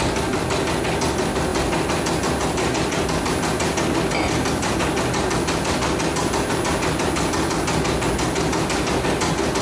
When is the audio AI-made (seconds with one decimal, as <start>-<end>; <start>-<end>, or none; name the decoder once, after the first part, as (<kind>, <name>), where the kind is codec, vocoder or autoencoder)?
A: none